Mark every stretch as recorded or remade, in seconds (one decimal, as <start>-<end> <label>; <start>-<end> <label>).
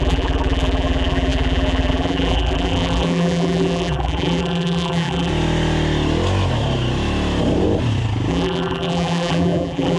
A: 0.0-5.3 remade; 5.3-8.3 recorded; 8.3-10.0 remade